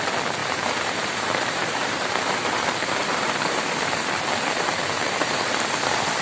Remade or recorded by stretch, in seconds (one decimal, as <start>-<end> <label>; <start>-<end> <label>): 0.0-0.4 recorded; 0.4-4.1 remade; 4.1-5.0 recorded; 5.0-5.6 remade; 5.6-6.2 recorded